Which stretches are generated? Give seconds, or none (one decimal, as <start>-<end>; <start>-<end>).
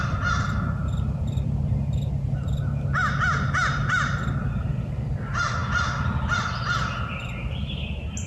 none